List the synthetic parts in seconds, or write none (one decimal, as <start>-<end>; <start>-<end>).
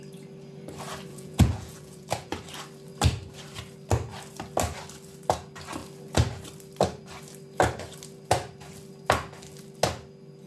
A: 1.1-2.3